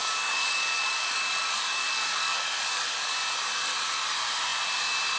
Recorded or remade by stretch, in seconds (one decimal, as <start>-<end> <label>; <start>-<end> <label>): 0.0-3.1 remade; 3.1-5.2 recorded